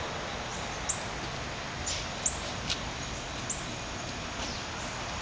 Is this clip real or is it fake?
real